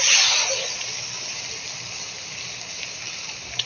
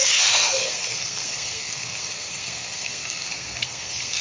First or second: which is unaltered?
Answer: first